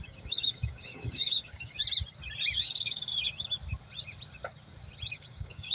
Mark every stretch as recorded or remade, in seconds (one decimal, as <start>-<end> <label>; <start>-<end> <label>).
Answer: 0.0-1.8 remade; 1.8-2.5 recorded; 2.5-3.1 remade; 3.1-5.1 recorded; 5.1-5.7 remade